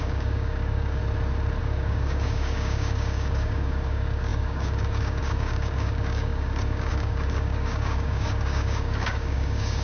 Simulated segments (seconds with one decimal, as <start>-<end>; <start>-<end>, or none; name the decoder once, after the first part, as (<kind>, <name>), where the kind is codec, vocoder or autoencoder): 0.0-1.0 (codec, DAC); 1.6-9.8

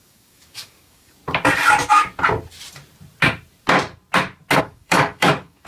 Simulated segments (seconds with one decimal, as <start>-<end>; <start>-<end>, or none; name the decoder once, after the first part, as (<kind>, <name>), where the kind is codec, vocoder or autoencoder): 0.0-1.2 (codec, DAC); 4.6-5.7

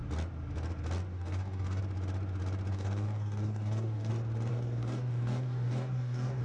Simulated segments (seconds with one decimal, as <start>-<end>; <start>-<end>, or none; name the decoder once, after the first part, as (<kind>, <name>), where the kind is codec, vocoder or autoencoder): 1.1-1.8 (codec, DAC); 2.7-4.1; 4.5-6.4

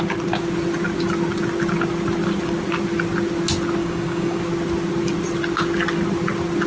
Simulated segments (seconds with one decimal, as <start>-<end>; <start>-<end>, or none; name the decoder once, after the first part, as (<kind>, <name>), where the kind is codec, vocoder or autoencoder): 3.8-4.4 (codec, DAC)